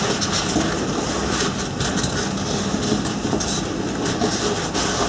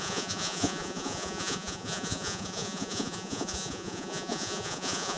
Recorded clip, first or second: first